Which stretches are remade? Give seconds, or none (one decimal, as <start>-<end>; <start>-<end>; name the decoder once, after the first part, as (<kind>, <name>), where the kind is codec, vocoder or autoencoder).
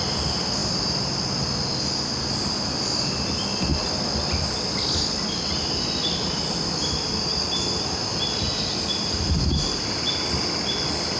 none